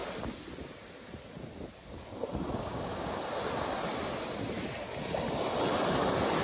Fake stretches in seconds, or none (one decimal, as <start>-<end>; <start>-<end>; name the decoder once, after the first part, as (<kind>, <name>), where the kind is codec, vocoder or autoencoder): 2.6-3.2 (codec, DAC)